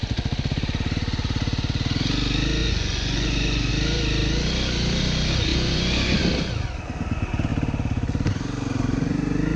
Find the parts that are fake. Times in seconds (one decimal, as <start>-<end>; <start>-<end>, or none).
2.6-3.7; 5.5-6.2